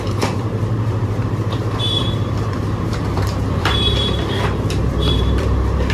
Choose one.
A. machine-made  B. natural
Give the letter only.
A